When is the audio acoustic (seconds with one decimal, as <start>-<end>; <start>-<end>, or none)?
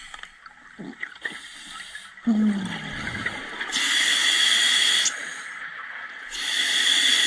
0.0-7.3